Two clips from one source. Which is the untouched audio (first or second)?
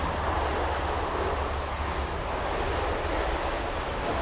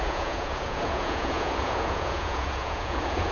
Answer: first